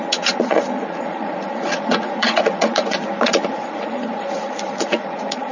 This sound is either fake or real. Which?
fake